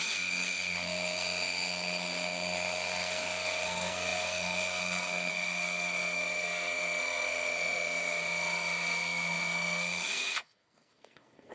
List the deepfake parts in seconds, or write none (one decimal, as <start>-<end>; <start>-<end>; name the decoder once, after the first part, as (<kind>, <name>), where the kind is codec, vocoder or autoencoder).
0.0-11.5 (codec, SNAC)